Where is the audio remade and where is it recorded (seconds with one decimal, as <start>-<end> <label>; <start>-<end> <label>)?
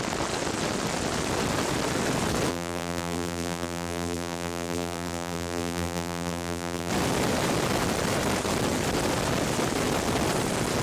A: 0.0-2.5 recorded; 2.5-6.9 remade; 6.9-10.8 recorded